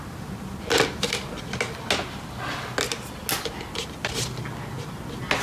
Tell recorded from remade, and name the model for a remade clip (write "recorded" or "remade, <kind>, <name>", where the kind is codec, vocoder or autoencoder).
recorded